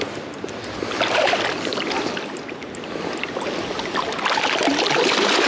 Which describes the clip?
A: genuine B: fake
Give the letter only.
A